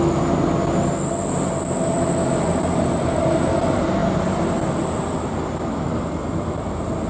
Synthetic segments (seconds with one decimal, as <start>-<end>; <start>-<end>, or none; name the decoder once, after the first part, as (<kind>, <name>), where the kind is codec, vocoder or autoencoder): none